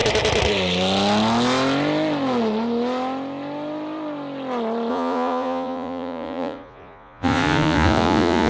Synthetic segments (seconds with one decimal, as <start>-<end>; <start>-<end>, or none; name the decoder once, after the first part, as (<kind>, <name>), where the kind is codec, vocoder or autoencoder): 4.9-8.5 (vocoder, Vocos)

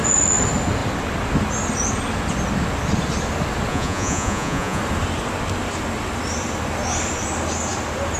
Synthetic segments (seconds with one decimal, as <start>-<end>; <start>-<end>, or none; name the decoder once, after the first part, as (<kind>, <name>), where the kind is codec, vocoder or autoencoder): 3.7-4.8 (vocoder, Vocos)

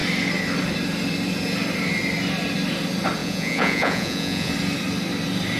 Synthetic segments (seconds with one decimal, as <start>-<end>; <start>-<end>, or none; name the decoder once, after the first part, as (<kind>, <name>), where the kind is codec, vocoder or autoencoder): 3.2-4.5 (vocoder, Vocos)

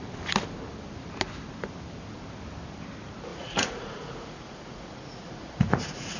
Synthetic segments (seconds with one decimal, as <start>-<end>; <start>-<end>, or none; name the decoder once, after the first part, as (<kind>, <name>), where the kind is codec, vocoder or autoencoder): 3.3-6.2 (vocoder, Vocos)

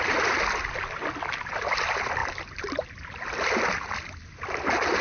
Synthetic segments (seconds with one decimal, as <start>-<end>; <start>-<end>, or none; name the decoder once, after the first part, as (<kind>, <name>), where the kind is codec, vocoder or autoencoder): none

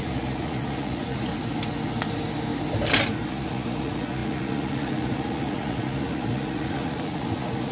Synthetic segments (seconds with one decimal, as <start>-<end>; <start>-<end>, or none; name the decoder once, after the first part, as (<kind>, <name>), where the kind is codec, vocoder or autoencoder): 0.0-1.3 (vocoder, Vocos); 3.3-7.7